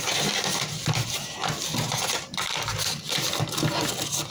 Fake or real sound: real